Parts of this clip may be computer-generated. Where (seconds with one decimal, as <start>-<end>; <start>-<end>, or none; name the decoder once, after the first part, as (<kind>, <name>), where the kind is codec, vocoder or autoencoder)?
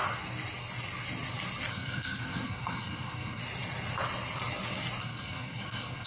1.7-3.4 (codec, SNAC); 5.0-6.1